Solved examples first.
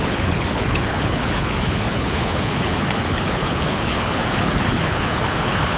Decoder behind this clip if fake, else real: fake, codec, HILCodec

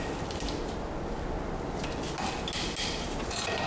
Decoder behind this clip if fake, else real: real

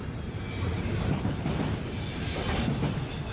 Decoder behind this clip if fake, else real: real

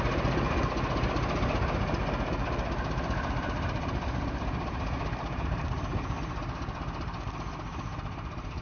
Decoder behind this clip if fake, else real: real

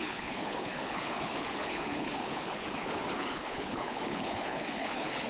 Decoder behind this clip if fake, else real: fake, codec, HILCodec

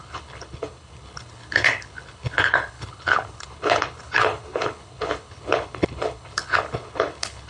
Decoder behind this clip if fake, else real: fake, codec, HILCodec